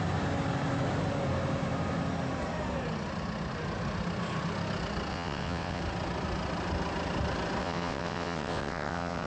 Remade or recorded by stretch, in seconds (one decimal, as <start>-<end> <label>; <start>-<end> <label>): 0.0-5.1 recorded; 5.1-5.8 remade; 5.8-7.6 recorded; 7.6-9.3 remade